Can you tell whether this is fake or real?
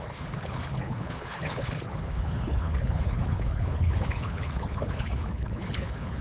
fake